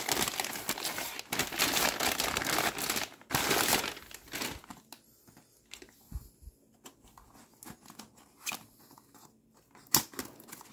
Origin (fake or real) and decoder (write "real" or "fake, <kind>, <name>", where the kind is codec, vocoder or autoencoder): real